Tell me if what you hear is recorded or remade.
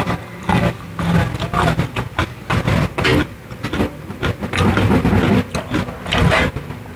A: recorded